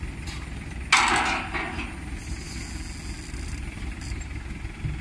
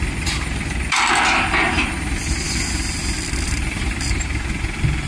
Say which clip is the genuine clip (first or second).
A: first